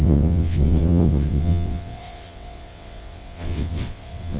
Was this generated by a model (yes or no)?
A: yes